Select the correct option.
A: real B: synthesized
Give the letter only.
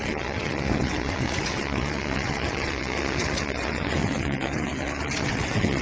B